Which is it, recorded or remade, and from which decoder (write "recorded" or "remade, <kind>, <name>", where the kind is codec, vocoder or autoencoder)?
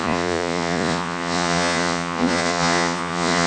remade, vocoder, Vocos